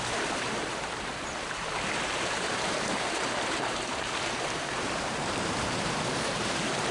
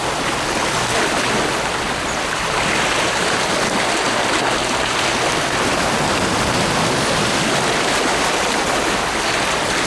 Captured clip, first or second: second